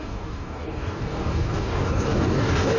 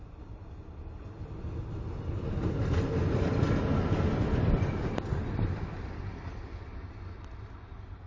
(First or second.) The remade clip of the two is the first